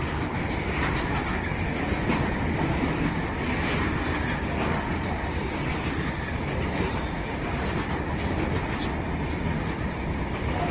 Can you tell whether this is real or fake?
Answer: real